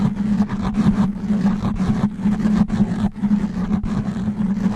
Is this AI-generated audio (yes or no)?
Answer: no